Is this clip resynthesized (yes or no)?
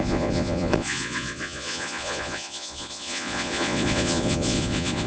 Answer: yes